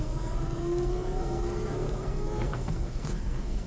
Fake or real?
fake